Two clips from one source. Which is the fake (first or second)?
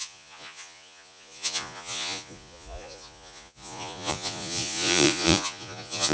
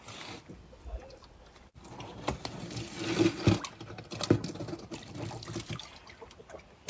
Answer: first